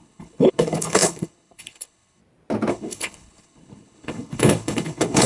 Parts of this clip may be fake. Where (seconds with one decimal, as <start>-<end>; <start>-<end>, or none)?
0.0-2.2; 2.7-5.3